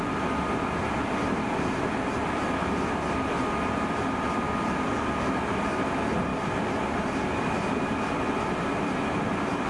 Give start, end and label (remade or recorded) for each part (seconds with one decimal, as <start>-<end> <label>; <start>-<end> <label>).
0.0-9.7 recorded